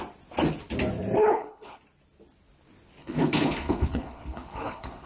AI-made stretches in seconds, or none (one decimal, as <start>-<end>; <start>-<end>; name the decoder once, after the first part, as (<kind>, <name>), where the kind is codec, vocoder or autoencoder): 1.2-1.8 (codec, HILCodec); 3.0-5.1